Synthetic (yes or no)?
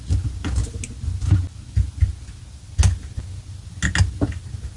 no